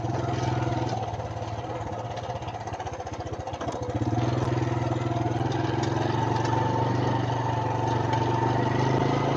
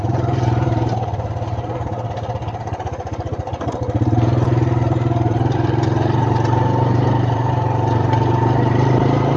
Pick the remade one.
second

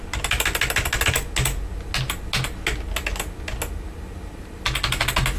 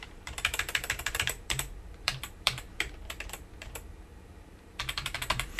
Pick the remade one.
second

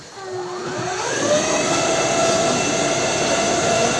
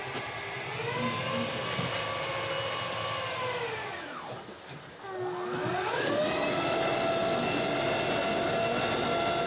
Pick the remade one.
first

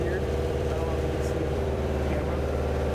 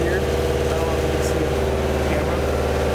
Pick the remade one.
first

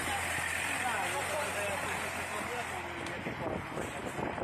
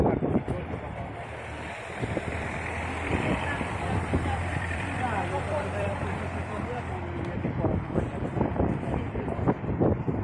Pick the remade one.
second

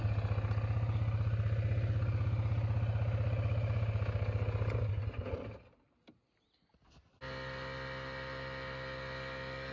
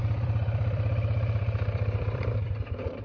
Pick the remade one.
second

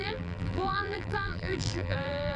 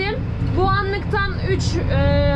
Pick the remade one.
first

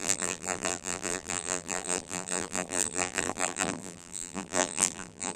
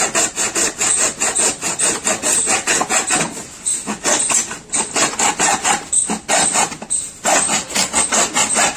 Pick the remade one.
first